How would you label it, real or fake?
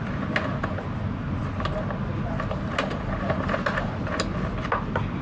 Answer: real